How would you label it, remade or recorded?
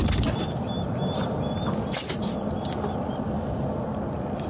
recorded